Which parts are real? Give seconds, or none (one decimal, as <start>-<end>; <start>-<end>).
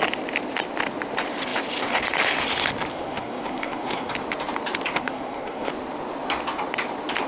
0.0-2.9; 4.1-5.0; 5.7-7.3